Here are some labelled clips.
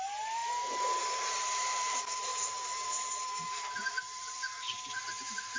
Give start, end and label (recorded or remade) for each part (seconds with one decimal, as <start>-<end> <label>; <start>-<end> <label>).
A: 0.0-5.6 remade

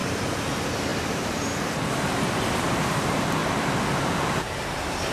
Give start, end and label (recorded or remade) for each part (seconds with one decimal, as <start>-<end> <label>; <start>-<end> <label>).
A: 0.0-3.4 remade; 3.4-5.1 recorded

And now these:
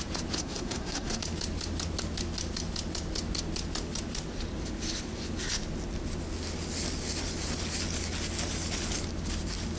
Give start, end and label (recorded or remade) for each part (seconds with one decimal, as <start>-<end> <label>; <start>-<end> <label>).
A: 0.0-0.4 recorded; 0.4-1.2 remade; 1.2-9.8 recorded